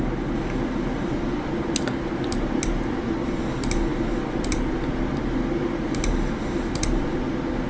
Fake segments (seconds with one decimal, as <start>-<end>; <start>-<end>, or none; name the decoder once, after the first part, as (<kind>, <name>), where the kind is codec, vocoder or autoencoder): none